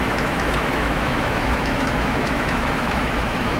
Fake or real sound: fake